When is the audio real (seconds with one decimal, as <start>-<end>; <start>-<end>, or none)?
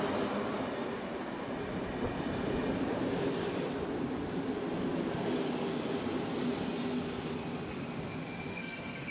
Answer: 0.0-8.5